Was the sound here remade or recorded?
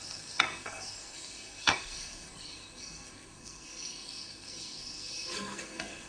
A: remade